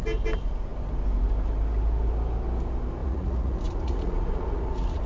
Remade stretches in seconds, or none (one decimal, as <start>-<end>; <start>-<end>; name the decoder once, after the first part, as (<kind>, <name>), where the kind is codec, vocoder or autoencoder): 3.0-5.1 (vocoder, Vocos)